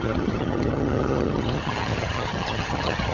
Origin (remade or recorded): remade